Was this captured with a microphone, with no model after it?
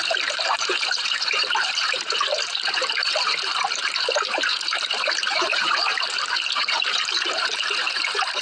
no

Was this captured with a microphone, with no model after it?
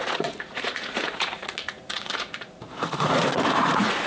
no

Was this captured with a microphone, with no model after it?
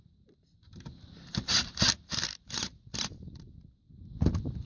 yes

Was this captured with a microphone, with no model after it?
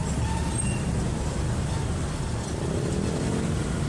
yes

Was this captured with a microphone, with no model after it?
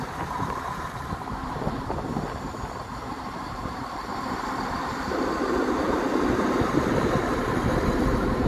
no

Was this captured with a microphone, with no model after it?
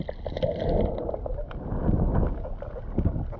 yes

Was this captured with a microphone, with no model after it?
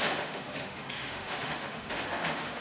no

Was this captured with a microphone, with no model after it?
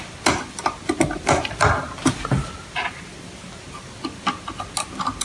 yes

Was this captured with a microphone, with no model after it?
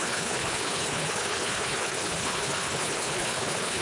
no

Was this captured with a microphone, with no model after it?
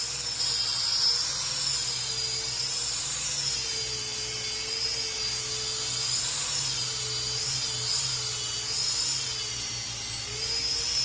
yes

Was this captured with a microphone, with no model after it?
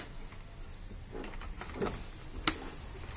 yes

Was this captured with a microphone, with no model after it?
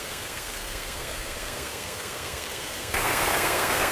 no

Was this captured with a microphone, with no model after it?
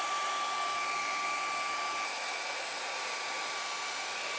yes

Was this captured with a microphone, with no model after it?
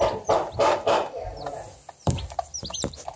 yes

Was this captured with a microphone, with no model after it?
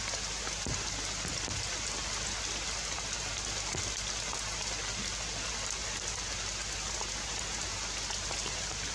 yes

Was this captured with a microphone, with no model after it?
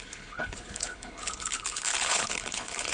no